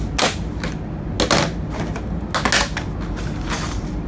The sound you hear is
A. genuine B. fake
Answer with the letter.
A